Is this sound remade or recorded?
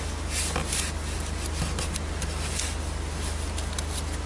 recorded